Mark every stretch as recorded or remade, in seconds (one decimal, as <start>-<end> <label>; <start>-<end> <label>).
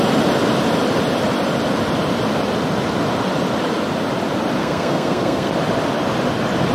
0.0-4.6 recorded; 4.6-5.5 remade; 5.5-6.7 recorded